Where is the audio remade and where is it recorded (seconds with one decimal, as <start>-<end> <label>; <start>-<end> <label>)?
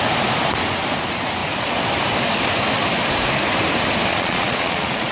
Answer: 0.0-4.1 recorded; 4.1-5.1 remade